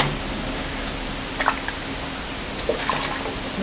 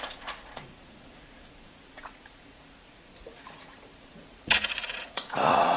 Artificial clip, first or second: second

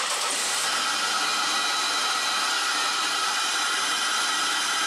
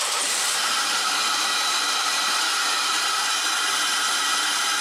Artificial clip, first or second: second